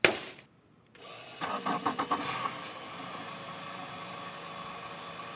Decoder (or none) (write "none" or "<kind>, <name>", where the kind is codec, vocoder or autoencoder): none